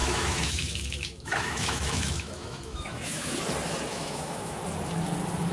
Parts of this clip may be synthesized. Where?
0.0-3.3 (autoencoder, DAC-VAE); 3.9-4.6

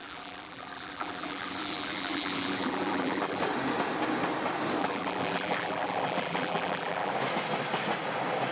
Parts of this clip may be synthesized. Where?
0.0-3.4 (vocoder, BigVGAN v2); 4.8-7.1